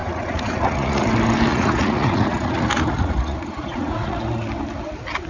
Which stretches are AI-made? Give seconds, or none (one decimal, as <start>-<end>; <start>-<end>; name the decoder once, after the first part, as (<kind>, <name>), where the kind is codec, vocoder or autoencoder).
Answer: 0.0-1.1 (vocoder, Vocos); 1.5-4.2